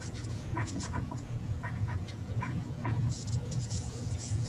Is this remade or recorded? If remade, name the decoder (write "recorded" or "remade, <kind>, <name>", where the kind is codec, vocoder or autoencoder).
remade, vocoder, Vocos